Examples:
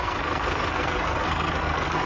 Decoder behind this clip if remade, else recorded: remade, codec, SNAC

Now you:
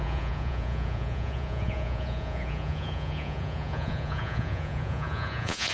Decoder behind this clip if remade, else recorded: remade, vocoder, Vocos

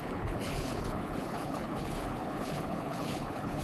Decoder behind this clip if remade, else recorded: remade, codec, HILCodec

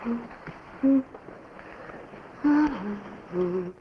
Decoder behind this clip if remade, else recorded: recorded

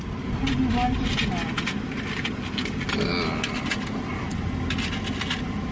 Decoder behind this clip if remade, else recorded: recorded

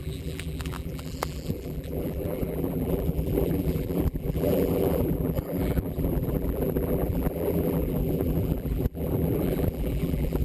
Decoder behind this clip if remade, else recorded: remade, vocoder, BigVGAN v2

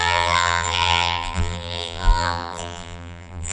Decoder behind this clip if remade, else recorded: remade, vocoder, BigVGAN v2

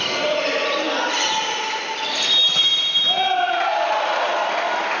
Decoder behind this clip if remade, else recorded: recorded